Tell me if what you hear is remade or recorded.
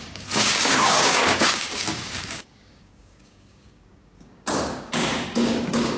remade